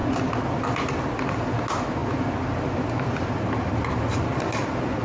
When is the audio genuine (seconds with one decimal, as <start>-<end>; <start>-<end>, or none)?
0.0-5.0